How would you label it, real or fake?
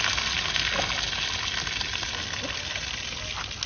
real